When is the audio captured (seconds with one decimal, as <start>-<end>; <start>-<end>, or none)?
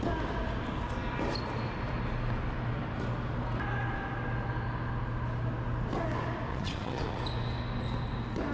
0.0-6.5; 7.2-8.5